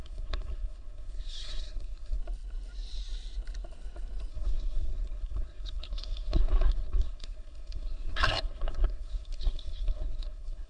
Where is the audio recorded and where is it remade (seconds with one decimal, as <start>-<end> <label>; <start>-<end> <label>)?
0.0-2.2 remade; 2.2-4.3 recorded; 4.3-10.7 remade